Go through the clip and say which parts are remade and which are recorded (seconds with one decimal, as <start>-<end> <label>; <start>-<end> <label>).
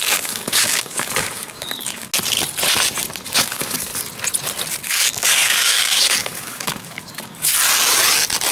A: 0.0-2.1 remade; 2.1-3.3 recorded; 3.3-3.9 remade; 3.9-4.8 recorded; 4.8-7.5 remade; 7.5-8.5 recorded